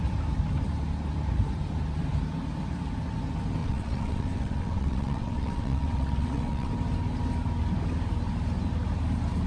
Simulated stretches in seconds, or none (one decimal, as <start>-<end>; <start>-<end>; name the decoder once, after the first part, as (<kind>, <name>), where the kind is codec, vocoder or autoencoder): 3.6-6.7 (vocoder, WaveNeXt)